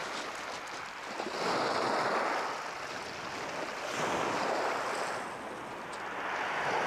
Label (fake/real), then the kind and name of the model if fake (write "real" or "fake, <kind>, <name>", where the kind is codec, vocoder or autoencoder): real